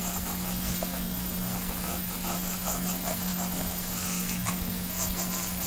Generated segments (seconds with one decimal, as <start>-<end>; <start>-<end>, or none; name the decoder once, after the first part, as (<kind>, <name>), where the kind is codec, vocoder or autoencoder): 0.0-5.7 (codec, SNAC)